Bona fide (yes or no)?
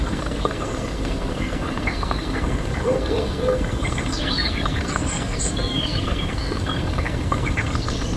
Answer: no